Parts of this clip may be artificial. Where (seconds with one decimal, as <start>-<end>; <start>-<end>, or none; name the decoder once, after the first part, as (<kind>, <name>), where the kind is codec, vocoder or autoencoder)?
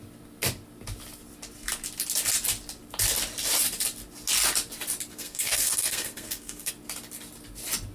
5.1-6.7 (codec, SNAC)